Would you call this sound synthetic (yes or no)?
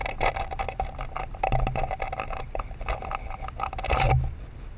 no